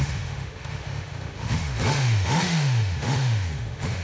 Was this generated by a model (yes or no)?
yes